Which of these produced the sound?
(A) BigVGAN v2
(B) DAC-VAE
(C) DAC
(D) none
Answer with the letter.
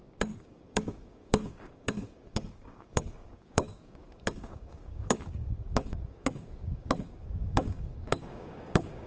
C